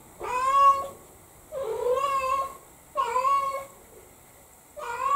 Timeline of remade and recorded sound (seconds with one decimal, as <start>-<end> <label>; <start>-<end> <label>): 0.0-3.1 recorded; 3.1-5.2 remade